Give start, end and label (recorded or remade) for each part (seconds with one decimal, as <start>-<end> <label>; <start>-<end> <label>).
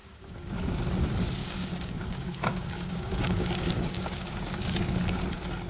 0.0-0.8 remade; 0.8-1.4 recorded; 1.4-4.8 remade; 4.8-5.7 recorded